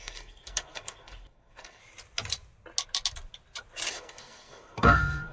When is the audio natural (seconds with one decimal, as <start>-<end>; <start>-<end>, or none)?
1.8-3.9